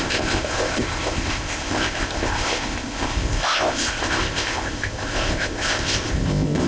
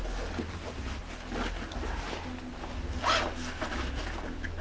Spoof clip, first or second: first